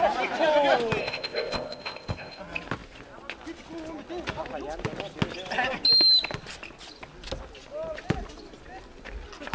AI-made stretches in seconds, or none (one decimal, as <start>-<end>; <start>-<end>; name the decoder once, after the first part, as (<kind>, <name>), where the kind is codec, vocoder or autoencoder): 1.0-2.4 (codec, ZipCodec)